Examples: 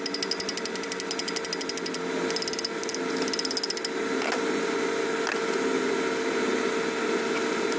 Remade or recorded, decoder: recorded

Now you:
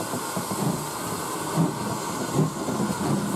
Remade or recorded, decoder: recorded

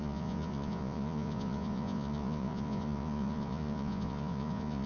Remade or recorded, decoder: remade, vocoder, Vocos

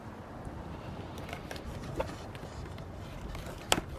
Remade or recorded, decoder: recorded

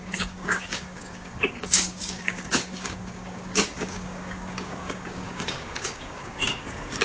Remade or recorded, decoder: remade, codec, DAC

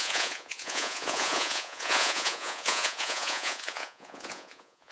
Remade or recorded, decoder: remade, vocoder, Vocos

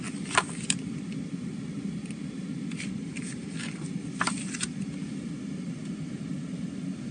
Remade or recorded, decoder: recorded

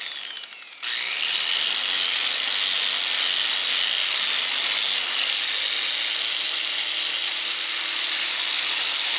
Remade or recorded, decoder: recorded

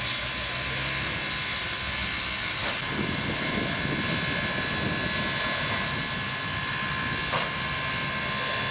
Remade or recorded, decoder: recorded